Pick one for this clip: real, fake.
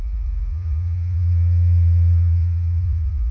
fake